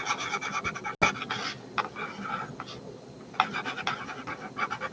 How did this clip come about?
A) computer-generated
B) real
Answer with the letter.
B